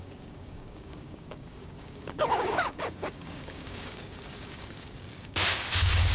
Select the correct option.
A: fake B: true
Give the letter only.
A